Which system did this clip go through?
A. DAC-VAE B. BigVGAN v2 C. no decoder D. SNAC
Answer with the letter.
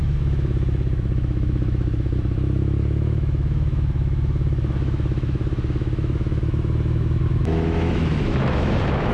A